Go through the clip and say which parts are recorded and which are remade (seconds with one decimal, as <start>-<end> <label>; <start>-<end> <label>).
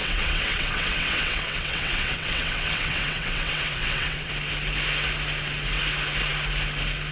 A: 0.0-4.3 remade; 4.3-7.1 recorded